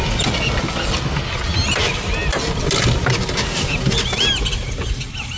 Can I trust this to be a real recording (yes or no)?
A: yes